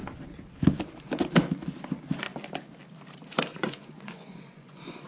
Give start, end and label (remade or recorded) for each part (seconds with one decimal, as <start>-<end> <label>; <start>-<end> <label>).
0.0-3.5 recorded; 3.5-5.1 remade